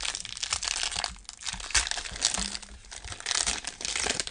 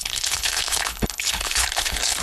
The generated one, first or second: second